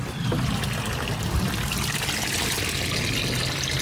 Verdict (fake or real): real